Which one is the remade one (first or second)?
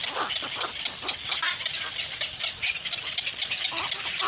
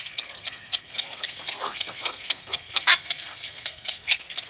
second